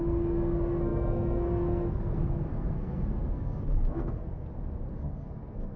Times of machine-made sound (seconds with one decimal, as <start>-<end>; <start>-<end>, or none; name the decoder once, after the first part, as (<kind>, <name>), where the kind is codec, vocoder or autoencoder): 0.0-4.2 (codec, SNAC); 4.9-5.8